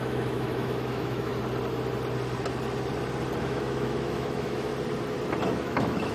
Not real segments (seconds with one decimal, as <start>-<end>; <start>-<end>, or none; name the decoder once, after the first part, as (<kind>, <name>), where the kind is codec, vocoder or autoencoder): 0.0-1.3 (autoencoder, DAC-VAE); 3.4-4.7; 5.5-6.1